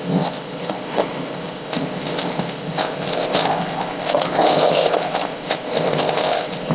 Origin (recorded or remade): remade